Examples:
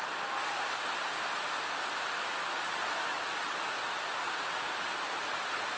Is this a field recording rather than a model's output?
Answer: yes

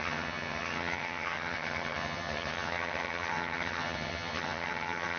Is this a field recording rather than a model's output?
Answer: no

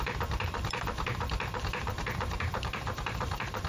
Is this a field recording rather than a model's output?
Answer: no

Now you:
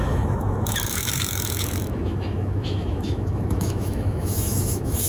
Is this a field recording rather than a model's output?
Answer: no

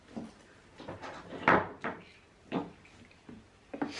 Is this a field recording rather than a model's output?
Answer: yes